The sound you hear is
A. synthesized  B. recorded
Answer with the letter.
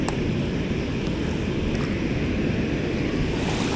B